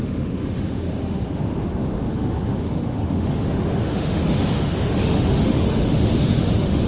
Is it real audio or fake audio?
fake